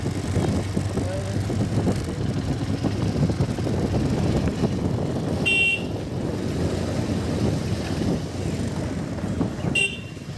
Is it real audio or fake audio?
real